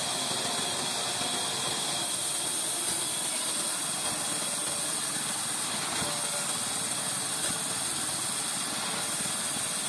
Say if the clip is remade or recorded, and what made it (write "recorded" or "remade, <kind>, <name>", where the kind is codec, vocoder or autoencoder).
recorded